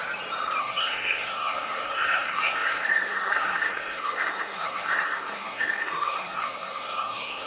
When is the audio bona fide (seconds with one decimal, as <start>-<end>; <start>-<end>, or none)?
0.0-0.6